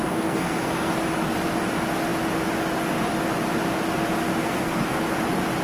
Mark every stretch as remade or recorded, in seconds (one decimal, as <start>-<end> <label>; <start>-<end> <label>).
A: 0.0-0.9 remade; 0.9-4.4 recorded; 4.4-5.0 remade; 5.0-5.6 recorded